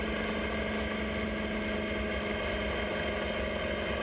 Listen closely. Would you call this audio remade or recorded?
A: recorded